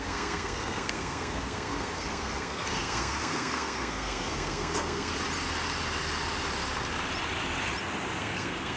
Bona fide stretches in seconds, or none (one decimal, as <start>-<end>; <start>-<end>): 5.1-8.2